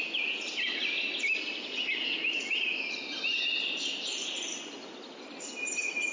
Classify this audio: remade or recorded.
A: recorded